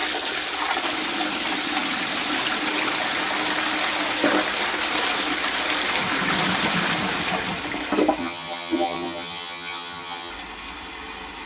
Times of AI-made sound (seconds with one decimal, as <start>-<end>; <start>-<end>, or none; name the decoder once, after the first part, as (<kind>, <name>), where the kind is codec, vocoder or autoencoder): 8.2-10.3 (vocoder, HiFi-GAN)